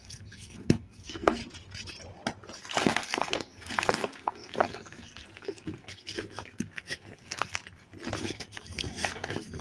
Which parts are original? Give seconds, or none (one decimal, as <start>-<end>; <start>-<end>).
1.4-2.6; 7.6-8.2